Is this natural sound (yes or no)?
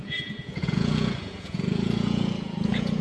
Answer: no